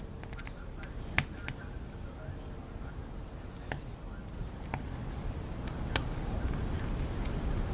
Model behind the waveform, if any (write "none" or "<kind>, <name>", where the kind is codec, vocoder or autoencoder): none